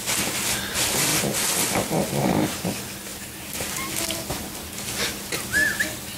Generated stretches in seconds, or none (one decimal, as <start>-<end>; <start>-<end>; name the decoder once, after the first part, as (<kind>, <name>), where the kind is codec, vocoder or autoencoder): none